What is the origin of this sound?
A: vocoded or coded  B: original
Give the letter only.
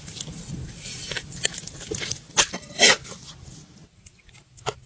B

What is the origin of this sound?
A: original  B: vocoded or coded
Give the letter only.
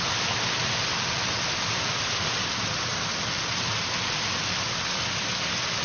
A